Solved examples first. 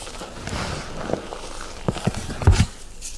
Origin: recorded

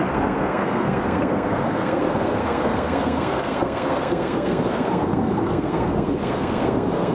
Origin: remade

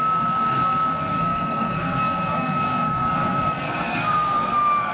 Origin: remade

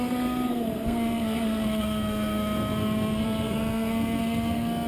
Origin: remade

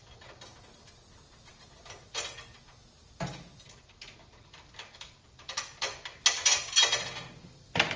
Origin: recorded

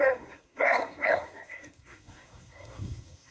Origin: remade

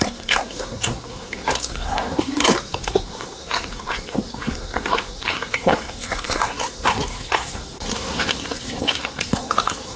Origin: remade